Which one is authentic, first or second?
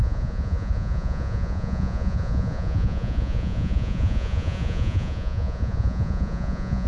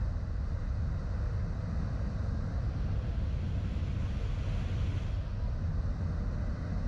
second